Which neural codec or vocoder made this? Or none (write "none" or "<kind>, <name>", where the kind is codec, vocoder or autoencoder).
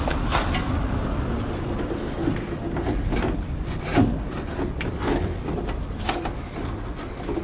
none